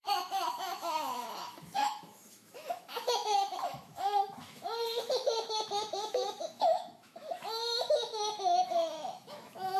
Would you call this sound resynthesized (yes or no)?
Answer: yes